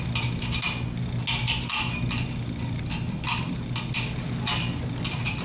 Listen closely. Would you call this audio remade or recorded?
recorded